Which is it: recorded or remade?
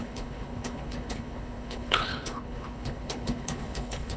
remade